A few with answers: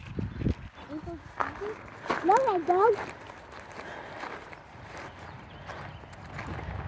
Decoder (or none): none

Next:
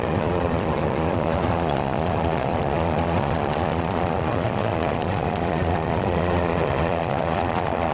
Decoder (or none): vocoder, Vocos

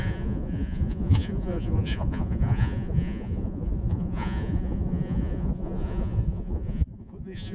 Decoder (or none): vocoder, Vocos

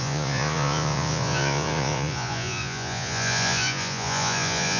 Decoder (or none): vocoder, Vocos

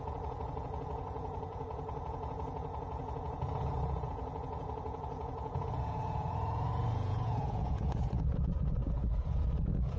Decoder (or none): vocoder, Vocos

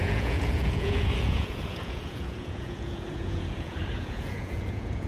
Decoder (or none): vocoder, Vocos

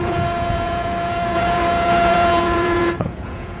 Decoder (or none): vocoder, Vocos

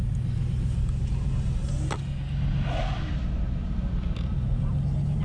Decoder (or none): none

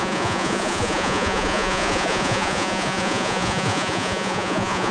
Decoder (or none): vocoder, Vocos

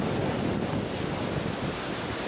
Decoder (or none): none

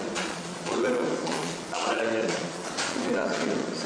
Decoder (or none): vocoder, Vocos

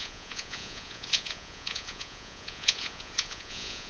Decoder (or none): vocoder, Vocos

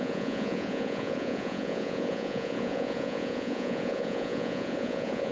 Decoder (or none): vocoder, Vocos